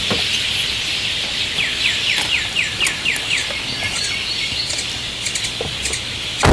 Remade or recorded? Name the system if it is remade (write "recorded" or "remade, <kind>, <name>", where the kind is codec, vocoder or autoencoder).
recorded